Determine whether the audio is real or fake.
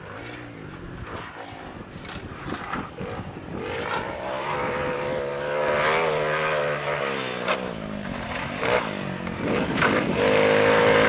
real